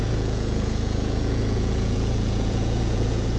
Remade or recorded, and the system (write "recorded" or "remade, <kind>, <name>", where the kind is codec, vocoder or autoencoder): remade, vocoder, Vocos